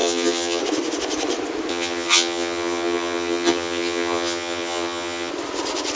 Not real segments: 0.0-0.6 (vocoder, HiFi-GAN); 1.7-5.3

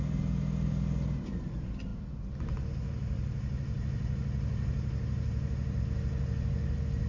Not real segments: none

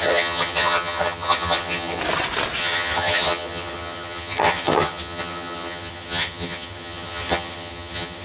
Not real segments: 0.0-2.0 (vocoder, HiFi-GAN); 2.6-8.2

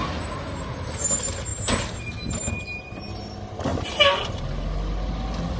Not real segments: none

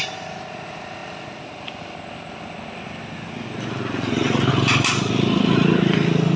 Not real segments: none

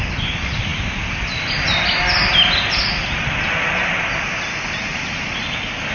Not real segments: none

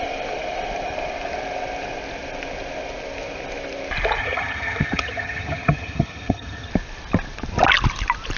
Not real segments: 4.2-6.7 (vocoder, HiFi-GAN)

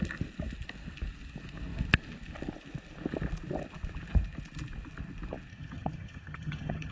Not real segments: 5.5-6.9 (vocoder, HiFi-GAN)